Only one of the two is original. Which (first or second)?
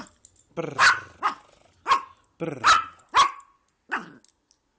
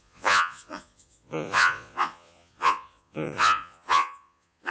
first